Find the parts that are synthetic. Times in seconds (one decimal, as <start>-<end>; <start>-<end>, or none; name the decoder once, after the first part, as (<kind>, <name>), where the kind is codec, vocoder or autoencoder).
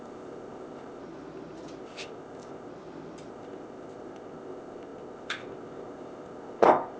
0.0-1.0 (codec, ZipCodec); 1.8-2.7; 3.3-7.0